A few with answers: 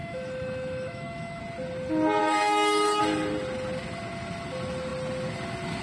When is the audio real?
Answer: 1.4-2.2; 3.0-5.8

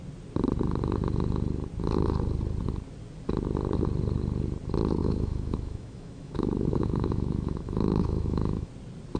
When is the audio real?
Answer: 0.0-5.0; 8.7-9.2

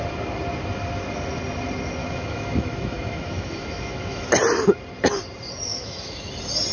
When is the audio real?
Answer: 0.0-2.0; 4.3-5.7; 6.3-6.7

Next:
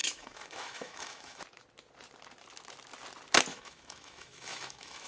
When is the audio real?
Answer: 1.4-3.5